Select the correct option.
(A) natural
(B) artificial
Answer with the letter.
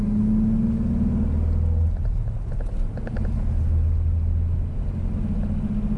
A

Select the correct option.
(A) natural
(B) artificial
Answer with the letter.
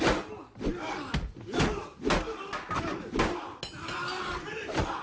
A